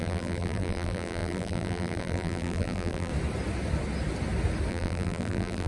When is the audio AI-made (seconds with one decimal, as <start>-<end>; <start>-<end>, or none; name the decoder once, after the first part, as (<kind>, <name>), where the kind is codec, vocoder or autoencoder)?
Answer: 0.0-3.1 (vocoder, BigVGAN v2); 4.7-5.7